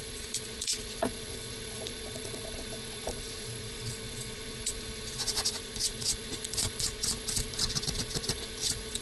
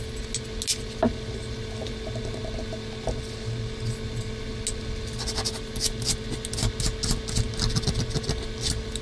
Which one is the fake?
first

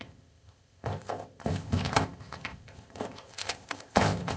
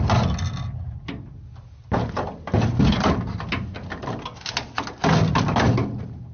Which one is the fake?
first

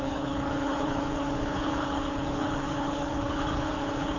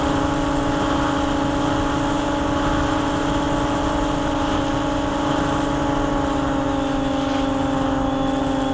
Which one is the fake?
first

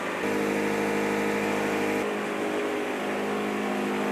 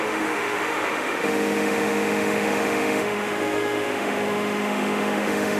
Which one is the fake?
second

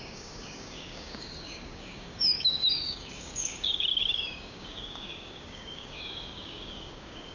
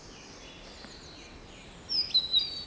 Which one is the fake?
first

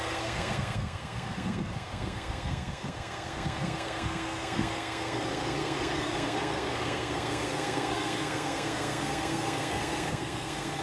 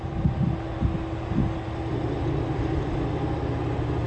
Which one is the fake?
first